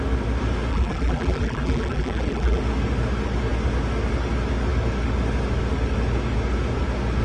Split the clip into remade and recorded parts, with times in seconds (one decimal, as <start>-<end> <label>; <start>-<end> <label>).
0.0-0.7 recorded; 0.7-2.6 remade; 2.6-7.2 recorded